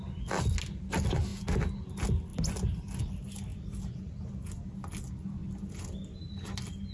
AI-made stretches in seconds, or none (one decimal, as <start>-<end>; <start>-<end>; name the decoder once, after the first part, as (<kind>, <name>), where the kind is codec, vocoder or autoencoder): none